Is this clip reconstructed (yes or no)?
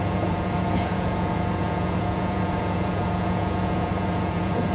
yes